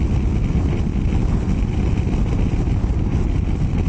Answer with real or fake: real